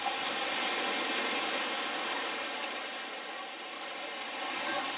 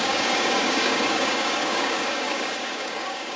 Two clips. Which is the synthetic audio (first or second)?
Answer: second